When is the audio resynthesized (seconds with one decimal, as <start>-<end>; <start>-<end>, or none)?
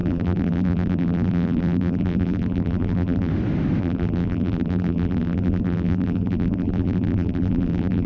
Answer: 0.0-3.3; 3.8-8.1